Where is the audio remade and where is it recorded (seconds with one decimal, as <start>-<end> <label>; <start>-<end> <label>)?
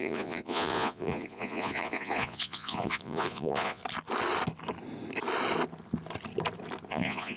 0.0-3.8 remade; 3.8-6.9 recorded; 6.9-7.4 remade